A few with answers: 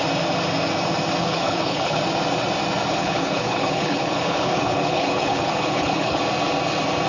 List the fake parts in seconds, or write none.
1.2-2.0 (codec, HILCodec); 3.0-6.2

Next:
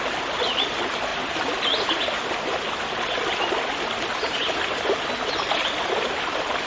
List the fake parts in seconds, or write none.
none